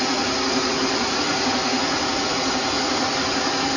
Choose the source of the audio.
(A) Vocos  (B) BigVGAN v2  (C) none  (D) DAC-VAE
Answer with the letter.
A